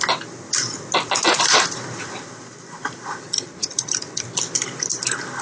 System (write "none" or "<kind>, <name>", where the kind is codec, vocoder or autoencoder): none